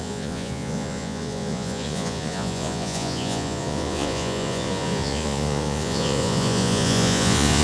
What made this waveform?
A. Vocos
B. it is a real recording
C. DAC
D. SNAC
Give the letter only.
A